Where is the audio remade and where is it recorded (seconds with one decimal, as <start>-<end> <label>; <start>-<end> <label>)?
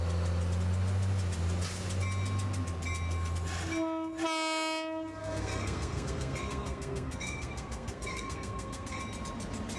0.0-5.2 recorded; 5.2-9.0 remade; 9.0-9.8 recorded